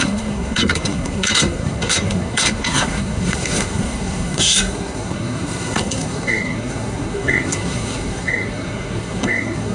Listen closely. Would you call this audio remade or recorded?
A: remade